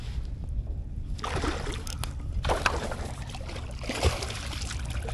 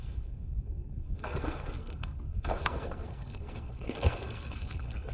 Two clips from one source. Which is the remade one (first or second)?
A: second